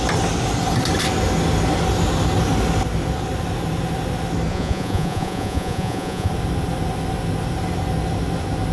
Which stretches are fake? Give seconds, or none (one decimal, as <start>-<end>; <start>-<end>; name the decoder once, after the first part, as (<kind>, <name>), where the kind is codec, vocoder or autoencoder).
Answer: 4.5-6.3 (vocoder, Vocos)